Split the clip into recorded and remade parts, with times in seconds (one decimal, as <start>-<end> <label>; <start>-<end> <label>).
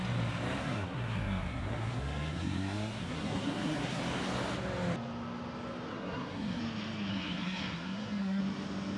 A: 0.0-0.6 recorded; 0.6-4.0 remade; 4.0-5.9 recorded; 5.9-6.6 remade; 6.6-7.1 recorded; 7.1-8.4 remade; 8.4-9.0 recorded